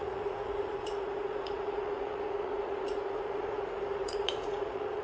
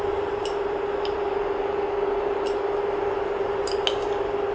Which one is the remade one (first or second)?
first